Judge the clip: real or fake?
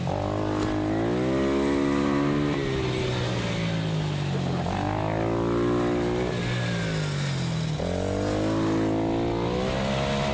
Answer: real